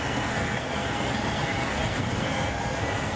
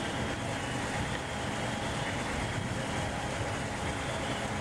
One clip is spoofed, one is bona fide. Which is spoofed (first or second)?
first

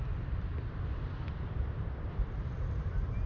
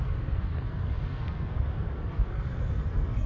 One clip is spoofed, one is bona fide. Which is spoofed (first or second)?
second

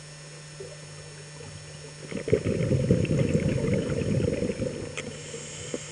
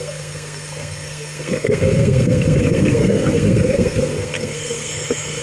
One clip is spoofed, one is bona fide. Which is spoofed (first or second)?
second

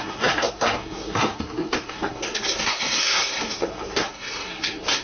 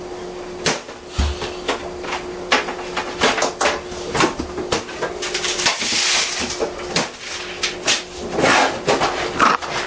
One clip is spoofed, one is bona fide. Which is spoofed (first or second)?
first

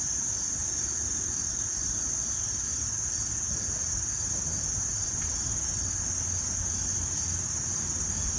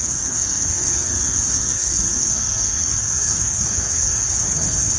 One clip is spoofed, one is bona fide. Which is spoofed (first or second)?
second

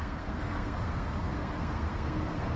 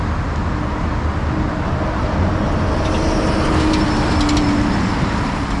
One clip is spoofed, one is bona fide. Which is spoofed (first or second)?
first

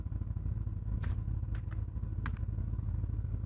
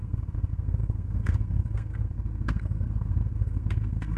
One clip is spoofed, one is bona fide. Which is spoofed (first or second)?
second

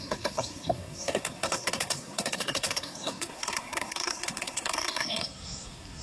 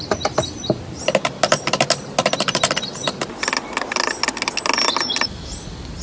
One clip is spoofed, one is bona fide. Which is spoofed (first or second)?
first